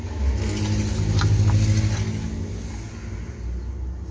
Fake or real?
real